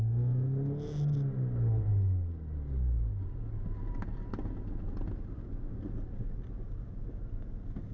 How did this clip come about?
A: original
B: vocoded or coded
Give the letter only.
A